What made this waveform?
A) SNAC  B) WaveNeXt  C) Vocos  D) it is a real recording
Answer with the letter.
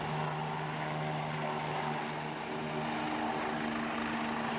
D